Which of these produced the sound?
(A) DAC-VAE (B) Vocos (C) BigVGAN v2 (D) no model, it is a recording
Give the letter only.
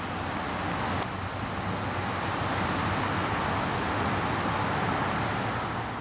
D